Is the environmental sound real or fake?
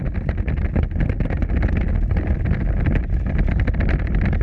real